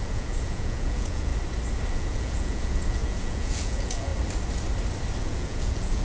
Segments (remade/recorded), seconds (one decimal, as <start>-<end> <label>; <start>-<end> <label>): 0.0-1.3 remade; 1.3-1.9 recorded; 1.9-4.1 remade; 4.1-5.2 recorded; 5.2-6.0 remade